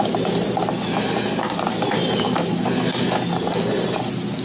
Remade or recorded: recorded